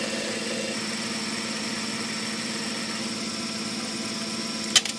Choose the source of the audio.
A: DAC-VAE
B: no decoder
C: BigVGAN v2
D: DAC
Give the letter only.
B